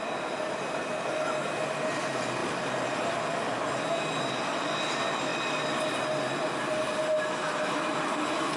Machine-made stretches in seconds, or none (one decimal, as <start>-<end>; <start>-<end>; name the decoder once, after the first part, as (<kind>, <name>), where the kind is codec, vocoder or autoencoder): none